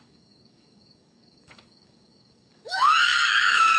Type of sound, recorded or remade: remade